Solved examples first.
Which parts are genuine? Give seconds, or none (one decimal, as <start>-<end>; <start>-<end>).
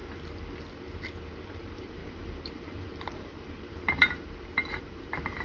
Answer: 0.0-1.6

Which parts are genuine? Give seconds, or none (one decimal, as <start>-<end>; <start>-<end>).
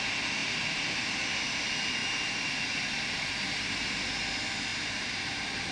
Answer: 0.0-0.4; 1.1-4.7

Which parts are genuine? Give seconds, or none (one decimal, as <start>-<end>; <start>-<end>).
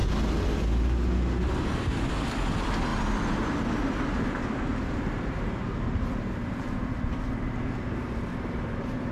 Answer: 0.0-1.4; 2.9-4.2; 5.6-8.5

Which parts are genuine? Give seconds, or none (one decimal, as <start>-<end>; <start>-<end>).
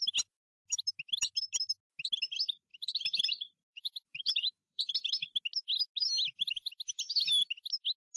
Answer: 0.0-2.7; 4.9-8.2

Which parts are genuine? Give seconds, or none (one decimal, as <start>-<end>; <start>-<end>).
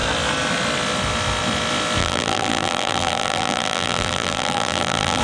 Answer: 0.0-2.0